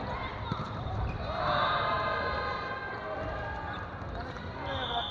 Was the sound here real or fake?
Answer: real